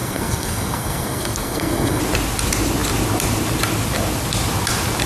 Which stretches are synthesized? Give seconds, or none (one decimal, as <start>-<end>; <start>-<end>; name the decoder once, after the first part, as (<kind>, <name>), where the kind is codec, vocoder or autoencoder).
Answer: 0.0-2.0 (codec, SNAC)